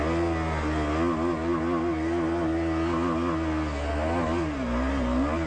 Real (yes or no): yes